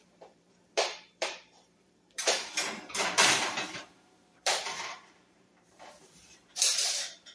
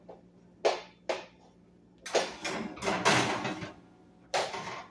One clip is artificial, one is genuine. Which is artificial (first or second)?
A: first